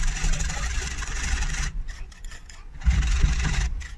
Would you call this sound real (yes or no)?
no